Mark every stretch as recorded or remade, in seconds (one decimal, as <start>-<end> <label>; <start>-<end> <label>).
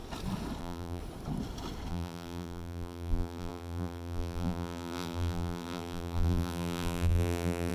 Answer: 0.0-0.6 recorded; 0.6-1.0 remade; 1.0-1.9 recorded; 1.9-7.7 remade